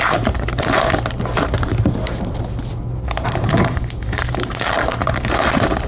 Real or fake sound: fake